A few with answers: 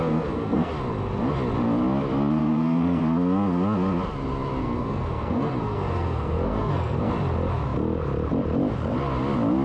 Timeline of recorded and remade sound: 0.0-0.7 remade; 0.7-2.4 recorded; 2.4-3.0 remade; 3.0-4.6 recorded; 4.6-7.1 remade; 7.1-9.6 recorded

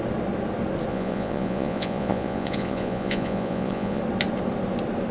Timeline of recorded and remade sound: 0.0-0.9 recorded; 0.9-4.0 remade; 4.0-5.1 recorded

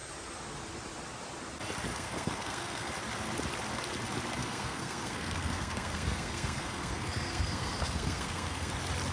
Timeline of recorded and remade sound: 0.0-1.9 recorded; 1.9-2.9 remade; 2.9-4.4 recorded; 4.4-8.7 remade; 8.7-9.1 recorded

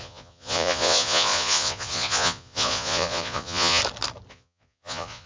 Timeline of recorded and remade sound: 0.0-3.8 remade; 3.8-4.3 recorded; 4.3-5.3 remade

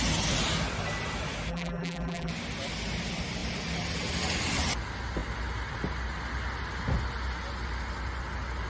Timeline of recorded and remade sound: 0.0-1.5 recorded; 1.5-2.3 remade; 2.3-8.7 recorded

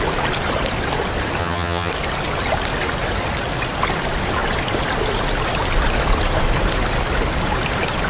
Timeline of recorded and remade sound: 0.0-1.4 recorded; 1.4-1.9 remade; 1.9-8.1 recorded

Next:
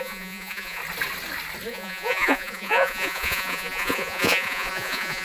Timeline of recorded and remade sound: 0.0-0.8 remade; 0.8-1.7 recorded; 1.7-5.2 remade

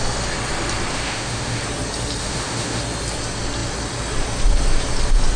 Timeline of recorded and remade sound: 0.0-0.9 recorded; 0.9-1.6 remade; 1.6-2.2 recorded; 2.2-2.8 remade; 2.8-5.4 recorded